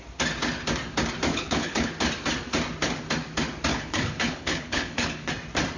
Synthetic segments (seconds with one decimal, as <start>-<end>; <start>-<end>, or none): 1.3-1.9; 3.7-5.3